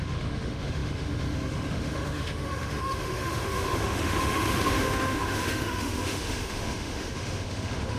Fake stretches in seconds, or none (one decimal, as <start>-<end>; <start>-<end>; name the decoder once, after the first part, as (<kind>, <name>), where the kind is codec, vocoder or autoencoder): 0.0-8.0 (autoencoder, DAC-VAE)